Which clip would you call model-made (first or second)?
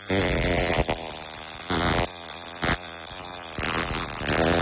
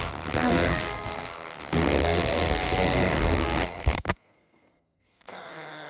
second